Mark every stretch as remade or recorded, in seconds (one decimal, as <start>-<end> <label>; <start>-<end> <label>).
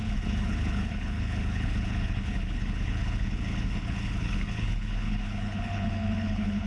0.0-6.7 remade